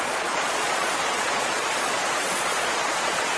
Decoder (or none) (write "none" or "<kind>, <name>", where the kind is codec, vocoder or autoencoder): vocoder, Vocos